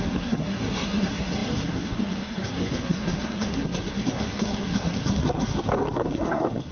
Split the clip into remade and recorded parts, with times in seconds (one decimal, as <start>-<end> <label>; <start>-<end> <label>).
0.0-6.7 remade

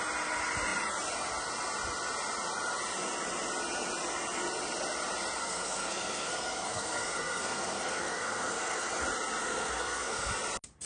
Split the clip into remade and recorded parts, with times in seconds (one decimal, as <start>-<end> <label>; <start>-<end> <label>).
0.0-5.4 recorded; 5.4-8.9 remade; 8.9-9.4 recorded; 9.4-10.3 remade; 10.3-10.9 recorded

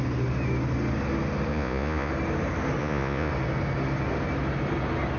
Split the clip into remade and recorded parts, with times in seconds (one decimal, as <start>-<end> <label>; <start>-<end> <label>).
0.0-1.5 recorded; 1.5-2.1 remade; 2.1-2.8 recorded; 2.8-3.3 remade; 3.3-5.2 recorded

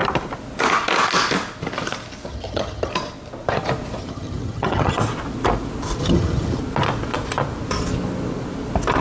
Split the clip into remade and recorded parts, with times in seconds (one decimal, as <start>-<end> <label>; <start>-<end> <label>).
0.0-2.3 recorded; 2.3-2.9 remade; 2.9-4.0 recorded; 4.0-5.0 remade; 5.0-6.0 recorded; 6.0-6.6 remade; 6.6-9.0 recorded

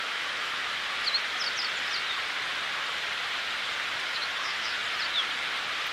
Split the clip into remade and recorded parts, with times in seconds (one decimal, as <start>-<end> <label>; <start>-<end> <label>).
0.0-0.6 remade; 0.6-4.1 recorded; 4.1-4.8 remade; 4.8-5.9 recorded

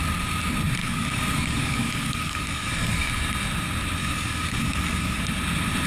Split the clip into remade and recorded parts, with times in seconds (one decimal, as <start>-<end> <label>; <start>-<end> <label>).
0.0-0.8 recorded; 0.8-3.1 remade; 3.1-4.0 recorded; 4.0-5.2 remade; 5.2-5.9 recorded

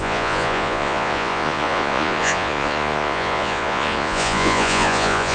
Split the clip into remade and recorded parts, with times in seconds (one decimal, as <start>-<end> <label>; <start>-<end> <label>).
0.0-5.3 remade